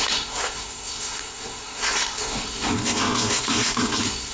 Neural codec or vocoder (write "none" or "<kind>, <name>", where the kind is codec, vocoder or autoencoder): codec, SNAC